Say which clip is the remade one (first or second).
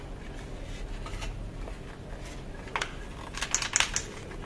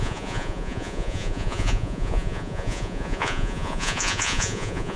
second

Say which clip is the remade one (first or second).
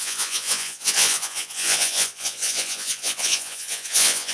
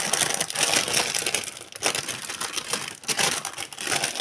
first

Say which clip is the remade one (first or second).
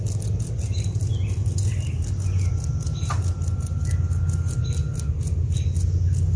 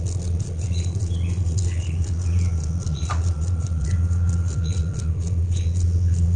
second